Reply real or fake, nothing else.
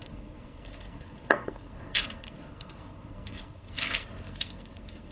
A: fake